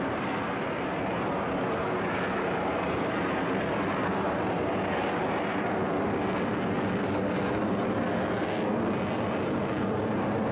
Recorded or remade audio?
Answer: recorded